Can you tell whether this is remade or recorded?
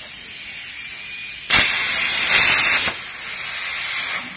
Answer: recorded